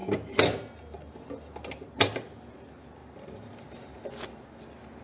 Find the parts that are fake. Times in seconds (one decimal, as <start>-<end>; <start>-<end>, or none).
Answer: none